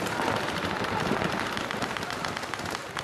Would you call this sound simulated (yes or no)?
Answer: yes